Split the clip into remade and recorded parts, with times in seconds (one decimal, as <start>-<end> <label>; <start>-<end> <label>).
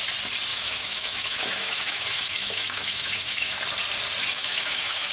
0.0-0.5 recorded; 0.5-3.6 remade; 3.6-4.2 recorded; 4.2-5.1 remade